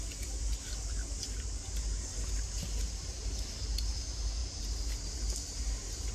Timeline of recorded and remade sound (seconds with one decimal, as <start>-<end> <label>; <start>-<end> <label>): 0.0-6.1 recorded